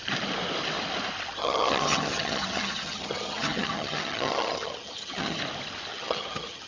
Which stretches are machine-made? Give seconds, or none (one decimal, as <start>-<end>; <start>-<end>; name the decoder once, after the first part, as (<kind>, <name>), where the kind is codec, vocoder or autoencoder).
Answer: 1.4-5.4 (vocoder, HiFi-GAN); 5.9-6.7